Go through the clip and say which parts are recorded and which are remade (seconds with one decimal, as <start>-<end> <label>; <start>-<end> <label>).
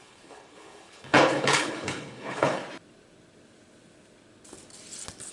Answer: 0.0-2.6 remade; 2.6-5.3 recorded